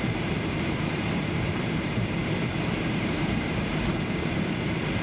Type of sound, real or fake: fake